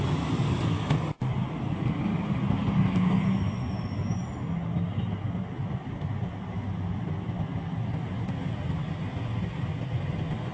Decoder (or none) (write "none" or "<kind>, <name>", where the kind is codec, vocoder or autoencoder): none